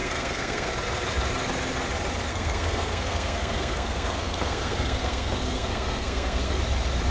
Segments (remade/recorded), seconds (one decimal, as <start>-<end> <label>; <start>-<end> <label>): 0.0-0.7 remade; 0.7-2.3 recorded; 2.3-6.6 remade; 6.6-7.1 recorded